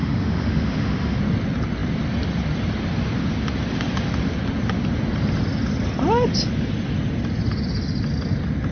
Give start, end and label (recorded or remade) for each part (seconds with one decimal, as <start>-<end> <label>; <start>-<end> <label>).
0.0-1.2 remade; 1.2-8.7 recorded